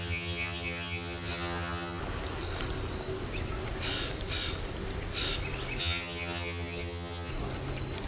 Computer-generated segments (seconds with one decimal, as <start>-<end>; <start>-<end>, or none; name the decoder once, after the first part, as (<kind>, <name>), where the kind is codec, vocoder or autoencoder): 0.0-2.0 (vocoder, HiFi-GAN); 5.8-7.3